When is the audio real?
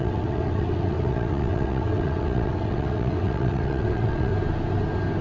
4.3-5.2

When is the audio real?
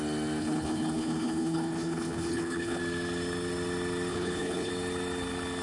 0.0-0.4; 2.8-4.1; 4.7-5.6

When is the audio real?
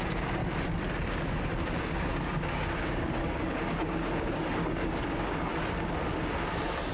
0.4-1.8; 5.5-6.9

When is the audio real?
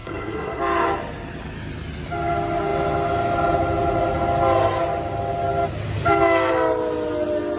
0.6-7.6